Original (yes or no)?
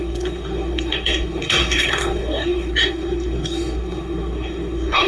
no